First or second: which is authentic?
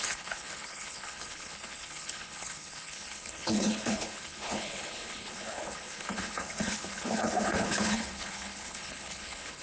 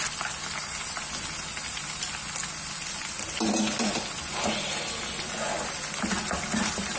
second